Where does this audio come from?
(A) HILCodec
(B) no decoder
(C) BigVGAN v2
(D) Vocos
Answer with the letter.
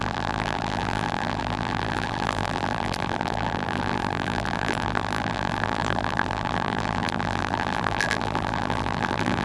C